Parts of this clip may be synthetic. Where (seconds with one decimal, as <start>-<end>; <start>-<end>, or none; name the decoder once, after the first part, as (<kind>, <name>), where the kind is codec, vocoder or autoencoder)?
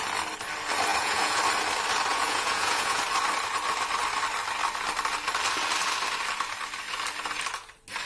0.9-1.4 (vocoder, Vocos); 2.1-3.0